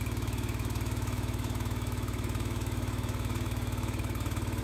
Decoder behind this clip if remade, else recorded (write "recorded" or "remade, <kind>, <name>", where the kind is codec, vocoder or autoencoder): remade, autoencoder, DAC-VAE